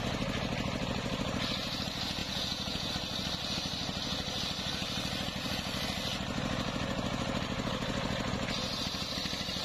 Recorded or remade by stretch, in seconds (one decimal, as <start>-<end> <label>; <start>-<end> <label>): 0.0-2.2 recorded; 2.2-2.9 remade; 2.9-9.6 recorded